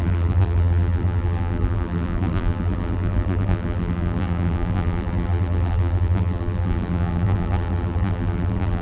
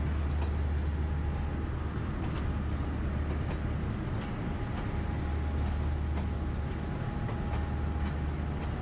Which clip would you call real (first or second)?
second